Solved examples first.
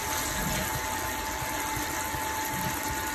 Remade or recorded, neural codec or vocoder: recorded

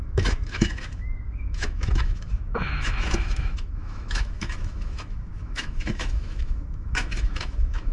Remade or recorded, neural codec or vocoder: remade, autoencoder, DAC-VAE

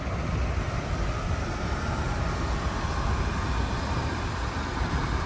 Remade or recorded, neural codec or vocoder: recorded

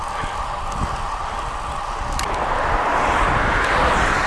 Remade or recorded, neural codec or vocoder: recorded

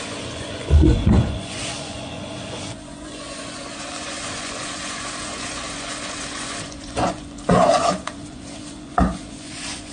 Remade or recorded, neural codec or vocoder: remade, vocoder, Vocos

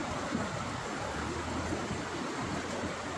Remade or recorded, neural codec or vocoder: recorded